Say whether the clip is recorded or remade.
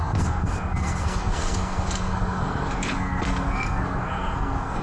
remade